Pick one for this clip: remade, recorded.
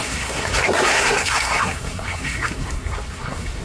remade